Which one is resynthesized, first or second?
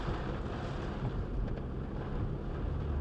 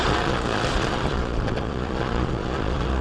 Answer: second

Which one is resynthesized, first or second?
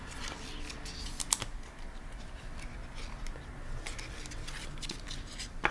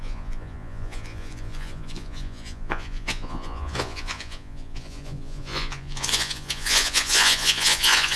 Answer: second